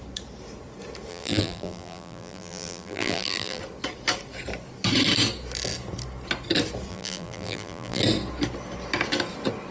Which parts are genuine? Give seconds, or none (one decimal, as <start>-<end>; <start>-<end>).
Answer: 0.0-1.1; 3.6-6.9; 8.0-9.7